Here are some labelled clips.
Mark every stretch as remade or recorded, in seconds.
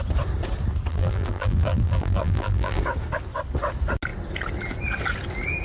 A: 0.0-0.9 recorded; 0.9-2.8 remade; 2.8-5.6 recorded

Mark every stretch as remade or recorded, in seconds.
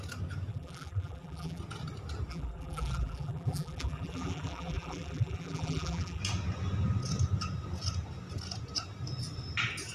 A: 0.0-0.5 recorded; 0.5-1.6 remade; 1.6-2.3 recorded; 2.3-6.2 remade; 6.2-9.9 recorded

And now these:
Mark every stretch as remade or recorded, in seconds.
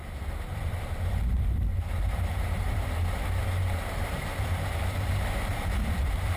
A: 0.0-6.4 remade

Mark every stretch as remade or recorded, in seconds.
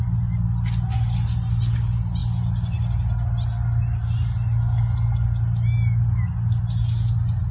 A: 0.0-7.5 recorded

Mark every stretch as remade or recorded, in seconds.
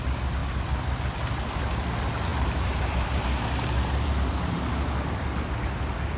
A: 0.0-2.3 recorded; 2.3-4.6 remade; 4.6-6.2 recorded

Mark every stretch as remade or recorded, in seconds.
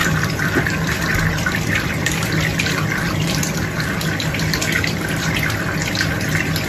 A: 0.0-0.7 remade; 0.7-1.3 recorded; 1.3-4.0 remade; 4.0-6.7 recorded